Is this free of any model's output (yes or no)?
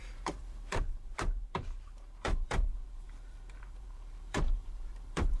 no